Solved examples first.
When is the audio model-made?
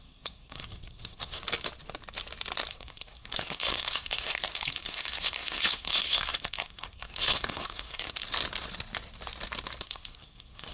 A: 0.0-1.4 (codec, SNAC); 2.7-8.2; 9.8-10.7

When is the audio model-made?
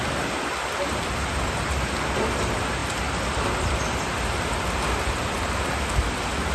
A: none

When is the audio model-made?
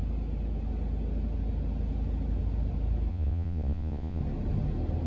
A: 3.1-4.2 (vocoder, Vocos)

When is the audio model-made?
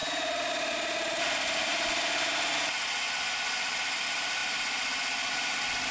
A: 1.2-1.7 (vocoder, BigVGAN v2); 4.0-4.4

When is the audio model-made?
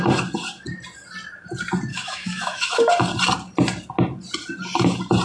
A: 1.9-2.9 (autoencoder, DAC-VAE)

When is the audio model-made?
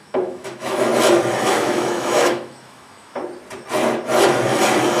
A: 0.0-0.9 (autoencoder, DAC-VAE); 1.4-3.2